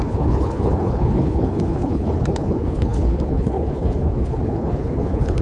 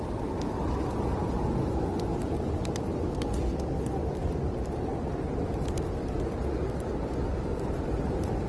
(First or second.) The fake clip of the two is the first